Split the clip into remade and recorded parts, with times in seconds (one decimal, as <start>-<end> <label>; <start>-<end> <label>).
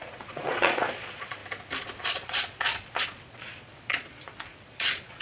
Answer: 0.0-1.4 remade; 1.4-2.0 recorded; 2.0-5.2 remade